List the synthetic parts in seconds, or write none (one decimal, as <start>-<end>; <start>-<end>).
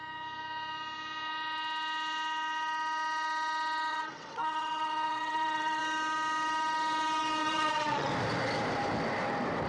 3.9-5.8; 7.4-8.1